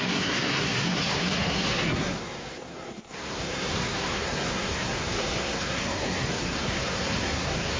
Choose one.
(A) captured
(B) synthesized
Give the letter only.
B